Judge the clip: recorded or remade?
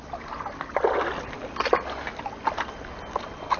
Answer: recorded